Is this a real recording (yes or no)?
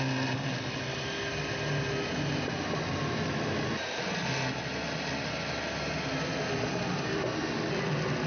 yes